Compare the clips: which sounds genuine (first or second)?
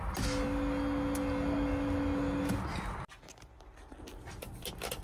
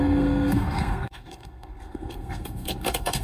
first